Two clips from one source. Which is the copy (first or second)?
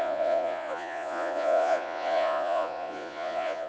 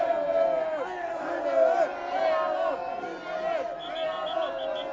first